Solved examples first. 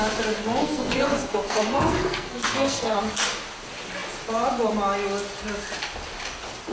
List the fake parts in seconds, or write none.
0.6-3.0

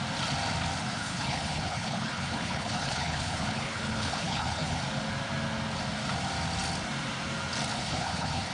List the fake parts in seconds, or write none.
0.9-4.8; 7.7-8.5

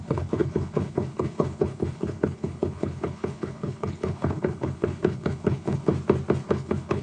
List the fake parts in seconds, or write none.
0.0-5.9; 6.5-7.0

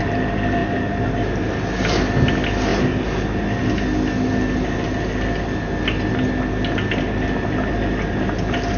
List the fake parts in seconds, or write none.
none

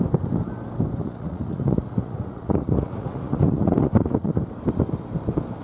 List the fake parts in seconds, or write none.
1.0-4.4

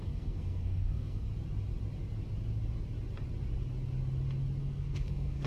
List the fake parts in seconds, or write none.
0.0-1.3; 4.6-5.5